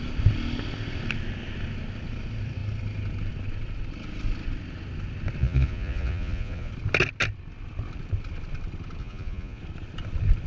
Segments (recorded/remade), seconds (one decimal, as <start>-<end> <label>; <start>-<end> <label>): 0.0-5.4 recorded; 5.4-6.7 remade; 6.7-9.0 recorded; 9.0-9.6 remade; 9.6-10.5 recorded